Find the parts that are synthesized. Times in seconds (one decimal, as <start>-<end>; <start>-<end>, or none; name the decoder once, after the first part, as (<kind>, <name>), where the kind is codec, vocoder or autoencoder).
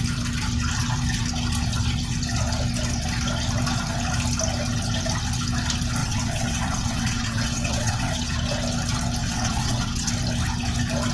6.0-8.1 (vocoder, WaveNeXt); 9.2-10.1